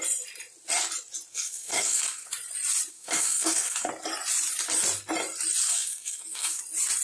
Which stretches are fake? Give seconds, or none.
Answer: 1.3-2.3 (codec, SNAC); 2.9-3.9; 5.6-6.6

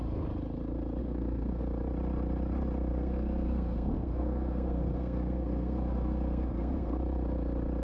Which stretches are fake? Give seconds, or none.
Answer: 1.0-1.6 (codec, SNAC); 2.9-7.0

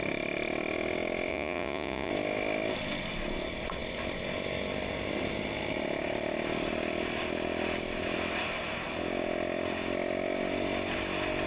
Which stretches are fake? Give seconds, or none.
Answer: 1.3-2.1 (vocoder, Vocos)

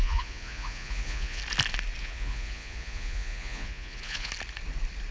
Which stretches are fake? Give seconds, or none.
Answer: 0.0-1.4 (vocoder, Vocos); 2.0-4.3

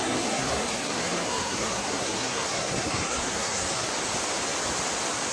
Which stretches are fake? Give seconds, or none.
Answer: 0.0-3.9 (codec, SNAC)

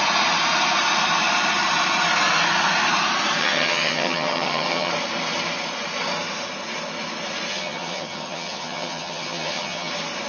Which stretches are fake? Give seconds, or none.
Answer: 3.4-4.9 (vocoder, HiFi-GAN); 7.5-9.9